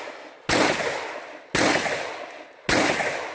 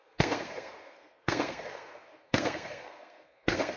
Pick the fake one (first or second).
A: second